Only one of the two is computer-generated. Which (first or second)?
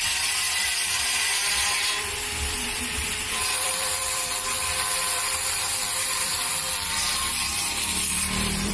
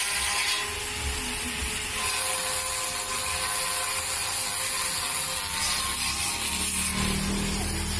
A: first